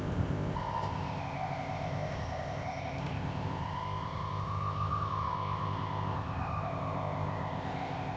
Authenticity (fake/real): fake